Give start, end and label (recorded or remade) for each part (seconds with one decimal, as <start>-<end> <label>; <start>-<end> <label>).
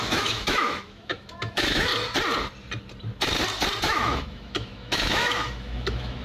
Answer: 0.0-1.9 remade; 1.9-3.8 recorded; 3.8-6.2 remade